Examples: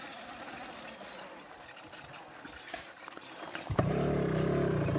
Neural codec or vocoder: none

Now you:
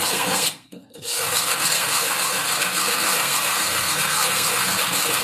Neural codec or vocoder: codec, SNAC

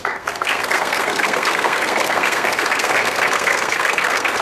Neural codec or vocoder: codec, SNAC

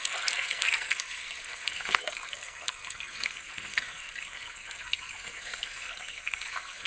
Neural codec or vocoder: codec, SNAC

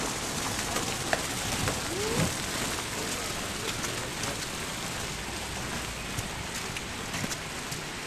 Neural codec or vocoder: none